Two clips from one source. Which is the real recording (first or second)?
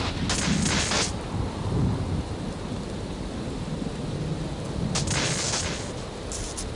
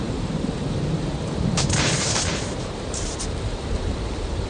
first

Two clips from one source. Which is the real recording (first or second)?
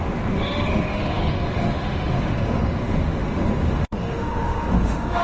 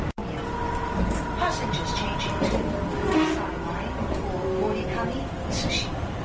second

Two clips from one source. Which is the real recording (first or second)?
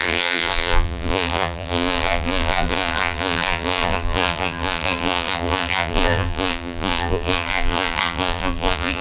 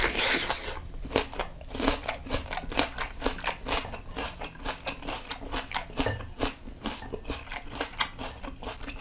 second